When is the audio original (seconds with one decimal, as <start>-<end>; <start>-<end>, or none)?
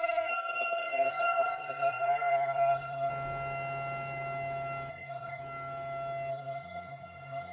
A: 3.1-4.9; 5.4-6.3